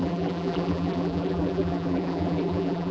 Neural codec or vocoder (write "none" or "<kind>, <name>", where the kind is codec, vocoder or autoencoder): vocoder, BigVGAN v2